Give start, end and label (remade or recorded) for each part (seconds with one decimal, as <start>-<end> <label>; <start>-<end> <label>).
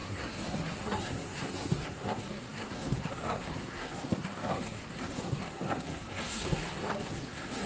0.0-7.7 remade